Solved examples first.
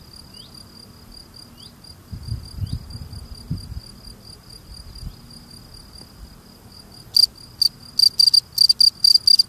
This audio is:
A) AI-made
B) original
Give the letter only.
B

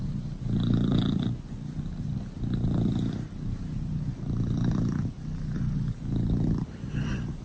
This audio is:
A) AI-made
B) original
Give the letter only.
B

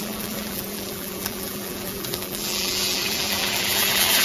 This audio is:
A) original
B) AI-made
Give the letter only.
B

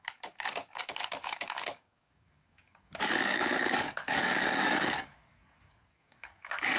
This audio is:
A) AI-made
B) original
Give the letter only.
A